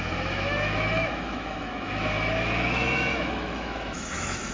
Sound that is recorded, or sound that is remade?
remade